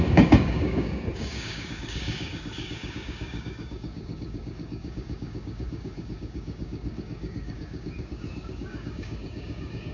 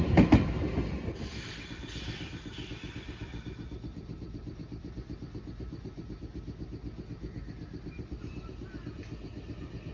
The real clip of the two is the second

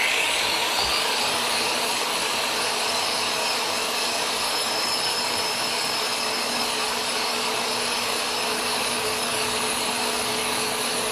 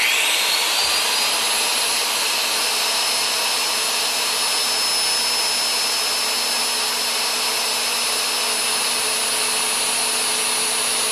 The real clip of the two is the second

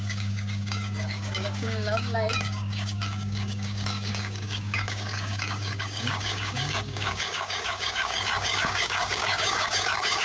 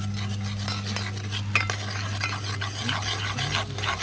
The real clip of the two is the second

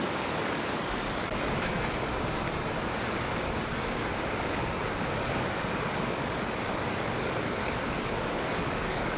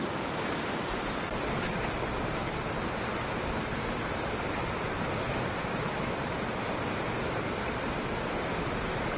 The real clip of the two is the second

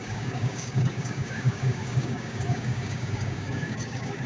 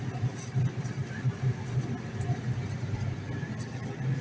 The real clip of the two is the second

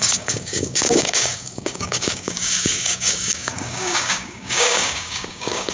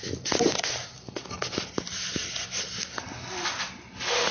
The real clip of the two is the second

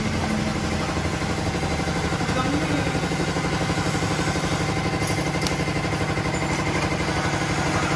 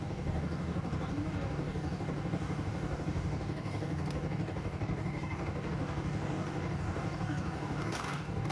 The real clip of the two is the first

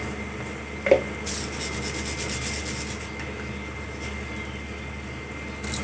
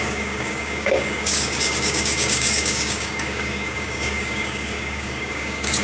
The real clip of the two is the first